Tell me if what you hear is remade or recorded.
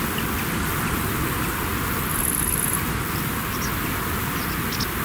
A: recorded